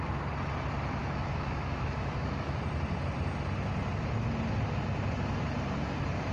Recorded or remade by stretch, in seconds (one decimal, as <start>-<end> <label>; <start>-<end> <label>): 0.0-1.0 recorded; 1.0-2.6 remade; 2.6-6.3 recorded